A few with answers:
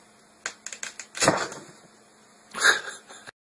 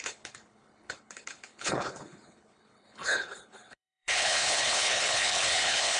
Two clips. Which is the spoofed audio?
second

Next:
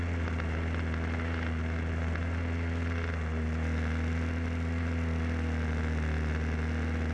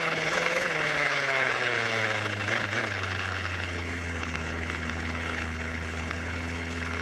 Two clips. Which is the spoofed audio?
second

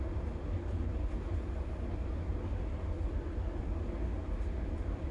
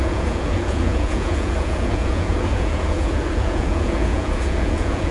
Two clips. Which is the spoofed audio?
second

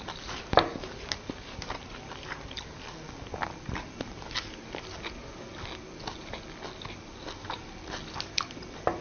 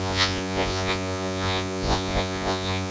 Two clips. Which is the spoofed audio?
second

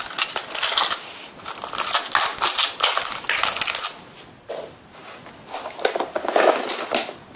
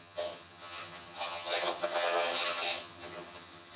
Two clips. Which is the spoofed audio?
second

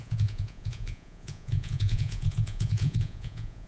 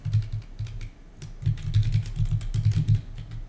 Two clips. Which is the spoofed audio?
first